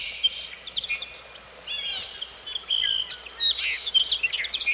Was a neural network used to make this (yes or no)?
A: no